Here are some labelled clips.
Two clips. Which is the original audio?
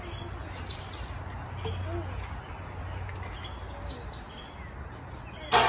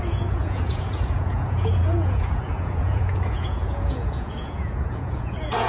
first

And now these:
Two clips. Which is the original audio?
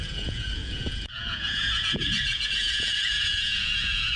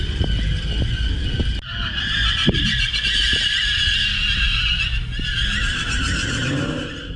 second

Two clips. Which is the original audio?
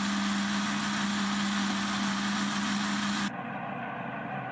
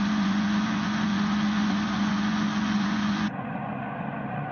first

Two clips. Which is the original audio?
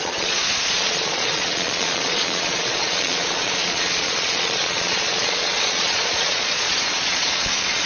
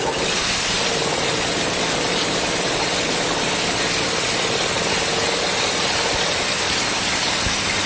second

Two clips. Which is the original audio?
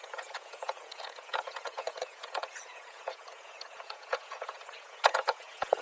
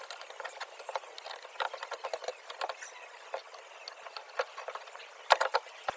second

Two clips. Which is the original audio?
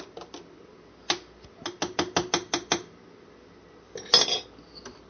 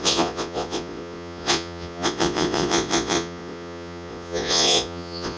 first